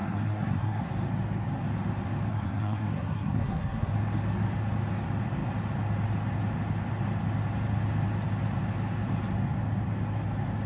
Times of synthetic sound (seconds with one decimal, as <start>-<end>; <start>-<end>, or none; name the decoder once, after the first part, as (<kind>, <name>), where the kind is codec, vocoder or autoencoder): 0.0-0.9 (codec, SNAC); 2.3-3.9